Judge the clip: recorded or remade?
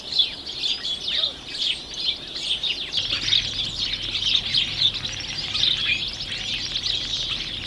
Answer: recorded